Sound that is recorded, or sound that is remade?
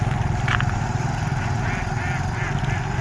recorded